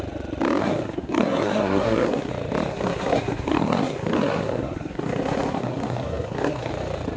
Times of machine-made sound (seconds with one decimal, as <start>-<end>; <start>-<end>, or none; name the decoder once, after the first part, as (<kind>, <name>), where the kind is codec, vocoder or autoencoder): 0.6-2.3 (codec, SNAC); 2.7-6.7